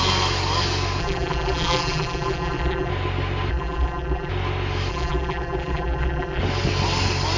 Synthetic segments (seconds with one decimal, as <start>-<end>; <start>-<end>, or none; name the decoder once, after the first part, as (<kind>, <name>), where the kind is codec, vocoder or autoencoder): 1.0-2.9 (vocoder, BigVGAN v2); 3.5-4.3; 4.9-6.4